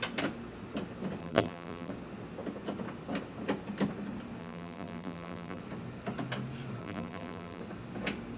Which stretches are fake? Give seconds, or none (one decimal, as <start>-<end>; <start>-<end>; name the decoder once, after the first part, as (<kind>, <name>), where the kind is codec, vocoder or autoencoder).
1.2-1.9 (vocoder, BigVGAN v2); 4.4-5.6; 6.8-7.6